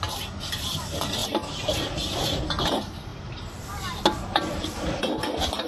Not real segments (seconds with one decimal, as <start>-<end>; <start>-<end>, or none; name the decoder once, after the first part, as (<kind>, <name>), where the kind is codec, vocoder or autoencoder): none